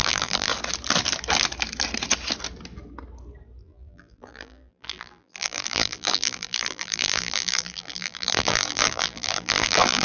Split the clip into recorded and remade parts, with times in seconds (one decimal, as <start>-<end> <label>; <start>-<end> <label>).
0.0-0.5 remade; 0.5-3.6 recorded; 3.6-10.0 remade